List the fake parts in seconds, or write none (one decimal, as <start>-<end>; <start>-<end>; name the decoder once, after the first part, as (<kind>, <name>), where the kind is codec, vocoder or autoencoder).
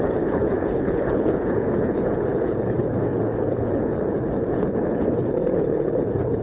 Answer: 0.0-6.4 (codec, HILCodec)